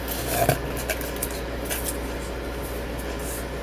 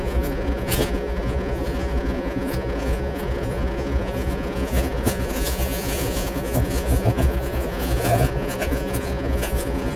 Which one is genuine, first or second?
first